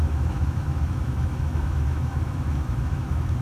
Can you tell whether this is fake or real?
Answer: fake